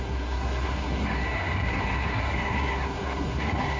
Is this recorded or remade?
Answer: remade